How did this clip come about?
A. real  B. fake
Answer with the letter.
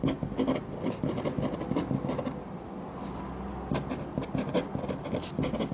A